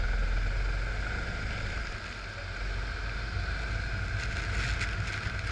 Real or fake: real